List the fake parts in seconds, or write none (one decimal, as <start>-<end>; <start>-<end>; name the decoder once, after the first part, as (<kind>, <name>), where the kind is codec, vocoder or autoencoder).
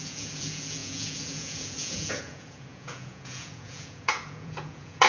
0.0-5.1 (vocoder, Vocos)